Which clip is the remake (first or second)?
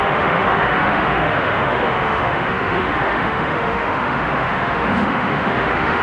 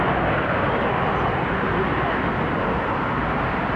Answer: first